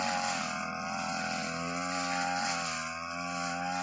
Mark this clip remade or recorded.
recorded